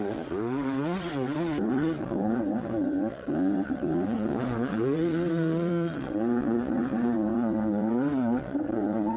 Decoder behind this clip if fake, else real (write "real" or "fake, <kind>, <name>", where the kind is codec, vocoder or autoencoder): fake, vocoder, WaveNeXt